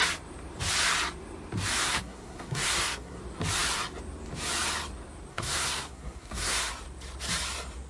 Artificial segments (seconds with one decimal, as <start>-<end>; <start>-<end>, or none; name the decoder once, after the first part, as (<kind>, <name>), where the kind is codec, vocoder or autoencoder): 1.8-3.2 (codec, SNAC); 5.3-6.7